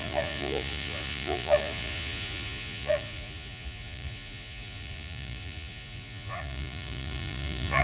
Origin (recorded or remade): remade